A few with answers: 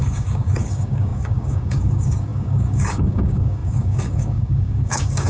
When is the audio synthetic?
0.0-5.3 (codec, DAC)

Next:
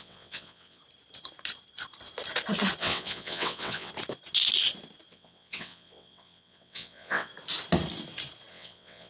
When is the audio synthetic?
0.0-0.8 (vocoder, WaveNeXt); 2.8-3.9; 5.1-7.3; 8.5-9.1

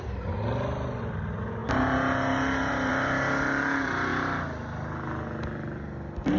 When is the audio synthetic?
none

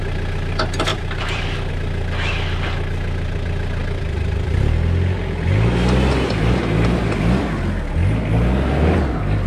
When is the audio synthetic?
0.9-1.7 (vocoder, BigVGAN v2); 3.8-4.5

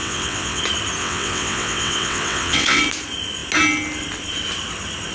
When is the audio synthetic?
0.0-0.6 (vocoder, WaveNeXt); 1.0-2.8